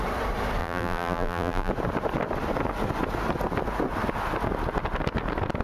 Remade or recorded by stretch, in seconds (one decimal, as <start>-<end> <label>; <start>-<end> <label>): 0.0-0.6 recorded; 0.6-1.7 remade; 1.7-5.6 recorded